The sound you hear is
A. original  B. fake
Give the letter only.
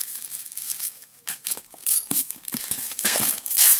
B